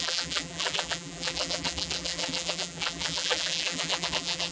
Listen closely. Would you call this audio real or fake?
fake